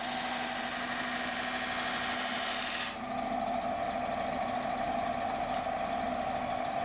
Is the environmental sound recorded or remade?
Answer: recorded